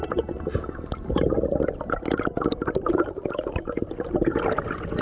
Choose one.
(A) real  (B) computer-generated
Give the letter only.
A